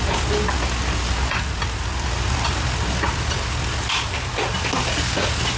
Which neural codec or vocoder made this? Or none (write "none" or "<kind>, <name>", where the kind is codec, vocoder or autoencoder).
none